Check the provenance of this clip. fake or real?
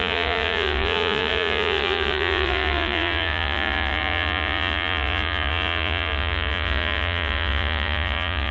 fake